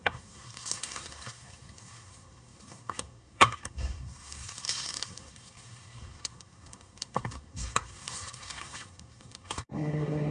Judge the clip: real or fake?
fake